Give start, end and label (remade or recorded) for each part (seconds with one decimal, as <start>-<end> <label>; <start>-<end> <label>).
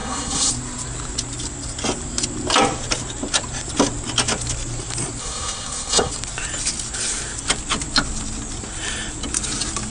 0.0-0.5 remade; 0.5-5.2 recorded; 5.2-6.1 remade; 6.1-9.9 recorded